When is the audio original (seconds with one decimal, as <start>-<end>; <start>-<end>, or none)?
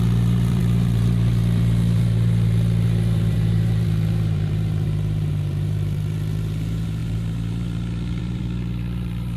none